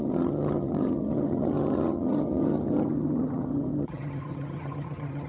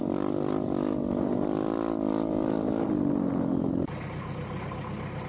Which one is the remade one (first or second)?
first